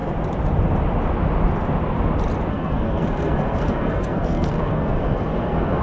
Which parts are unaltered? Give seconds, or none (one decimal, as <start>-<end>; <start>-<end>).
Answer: 0.0-2.5